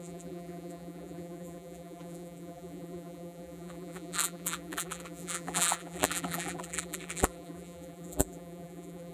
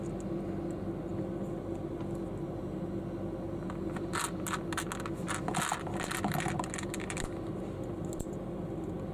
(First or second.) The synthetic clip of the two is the first